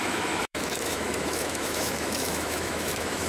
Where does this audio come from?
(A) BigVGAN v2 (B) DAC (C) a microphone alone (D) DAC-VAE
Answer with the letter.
D